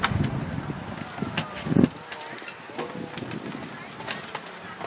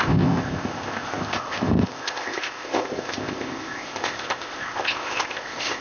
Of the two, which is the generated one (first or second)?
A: second